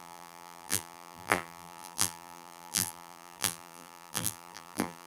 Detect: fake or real fake